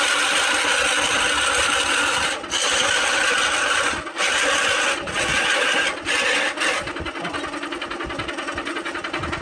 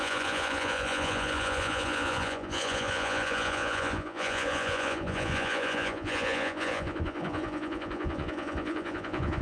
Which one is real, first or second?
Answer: first